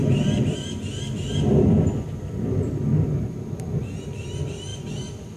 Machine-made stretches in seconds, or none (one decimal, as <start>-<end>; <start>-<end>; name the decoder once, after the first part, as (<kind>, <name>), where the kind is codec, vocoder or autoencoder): 0.0-3.2 (vocoder, BigVGAN v2); 4.7-5.4